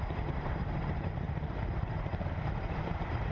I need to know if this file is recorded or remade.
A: remade